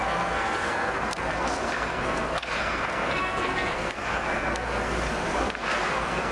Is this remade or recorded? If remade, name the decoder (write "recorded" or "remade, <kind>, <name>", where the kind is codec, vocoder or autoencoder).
remade, codec, SNAC